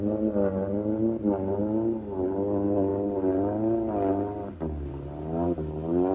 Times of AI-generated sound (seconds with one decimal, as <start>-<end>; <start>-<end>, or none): none